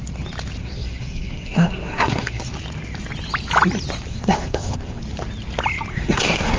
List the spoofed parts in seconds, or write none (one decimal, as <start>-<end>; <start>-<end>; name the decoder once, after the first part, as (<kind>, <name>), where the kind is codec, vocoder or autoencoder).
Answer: 0.6-2.5 (codec, SNAC); 4.1-5.0; 5.9-6.6